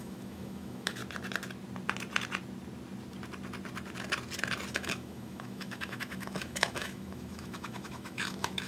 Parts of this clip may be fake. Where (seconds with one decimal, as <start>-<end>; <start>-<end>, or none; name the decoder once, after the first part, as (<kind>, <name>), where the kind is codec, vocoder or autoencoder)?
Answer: 0.0-1.0 (autoencoder, DAC-VAE); 4.7-8.7